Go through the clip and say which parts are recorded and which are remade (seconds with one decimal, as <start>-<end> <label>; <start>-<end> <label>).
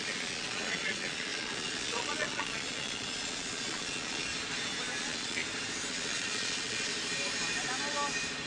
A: 0.0-4.3 remade; 4.3-5.0 recorded; 5.0-5.4 remade; 5.4-5.9 recorded; 5.9-6.9 remade; 6.9-8.5 recorded